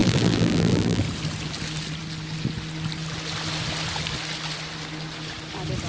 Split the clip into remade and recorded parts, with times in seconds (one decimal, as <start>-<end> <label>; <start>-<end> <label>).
0.0-1.0 remade; 1.0-5.9 recorded